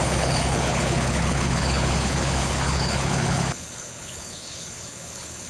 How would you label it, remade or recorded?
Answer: remade